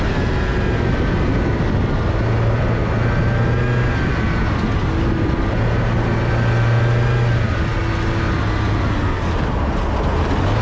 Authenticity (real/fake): real